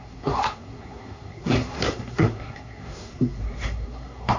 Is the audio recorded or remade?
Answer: remade